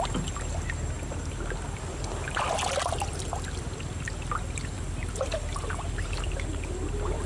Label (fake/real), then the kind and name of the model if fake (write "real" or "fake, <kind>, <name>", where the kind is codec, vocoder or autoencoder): real